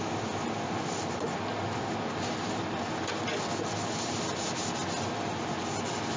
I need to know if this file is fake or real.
real